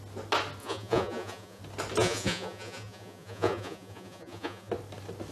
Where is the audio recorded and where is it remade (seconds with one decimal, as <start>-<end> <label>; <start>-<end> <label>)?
0.0-0.6 recorded; 0.6-1.6 remade; 1.6-2.0 recorded; 2.0-4.7 remade; 4.7-5.3 recorded